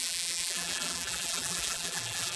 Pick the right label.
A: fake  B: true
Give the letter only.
A